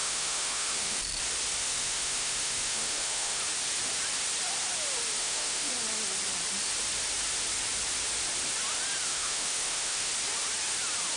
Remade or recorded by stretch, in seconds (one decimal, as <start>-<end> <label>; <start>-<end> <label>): 0.0-1.0 remade; 1.0-1.6 recorded; 1.6-3.4 remade; 3.4-5.2 recorded; 5.2-5.7 remade; 5.7-9.1 recorded; 9.1-10.1 remade; 10.1-11.2 recorded